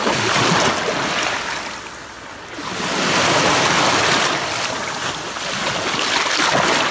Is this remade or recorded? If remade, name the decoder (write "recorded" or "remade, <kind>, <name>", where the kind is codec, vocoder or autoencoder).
recorded